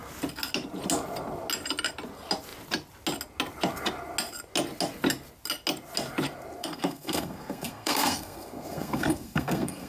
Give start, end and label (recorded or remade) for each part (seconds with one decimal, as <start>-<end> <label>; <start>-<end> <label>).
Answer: 0.0-6.6 recorded; 6.6-9.9 remade